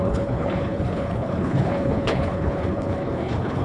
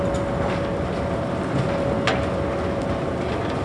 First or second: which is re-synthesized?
first